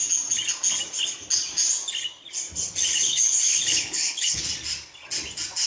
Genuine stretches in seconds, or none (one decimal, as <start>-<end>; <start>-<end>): 0.0-2.9; 4.4-5.7